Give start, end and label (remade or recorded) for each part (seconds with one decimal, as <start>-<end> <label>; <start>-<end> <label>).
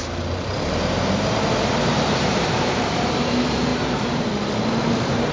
0.0-3.2 remade; 3.2-3.7 recorded; 3.7-4.3 remade; 4.3-5.3 recorded